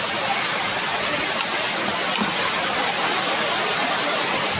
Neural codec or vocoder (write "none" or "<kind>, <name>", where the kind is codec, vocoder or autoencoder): none